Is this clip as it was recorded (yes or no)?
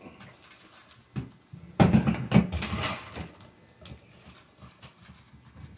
yes